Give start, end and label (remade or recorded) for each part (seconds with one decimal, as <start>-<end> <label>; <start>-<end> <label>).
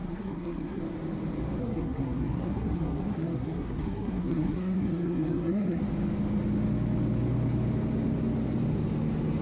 0.0-0.8 remade; 0.8-1.6 recorded; 1.6-5.8 remade; 5.8-9.4 recorded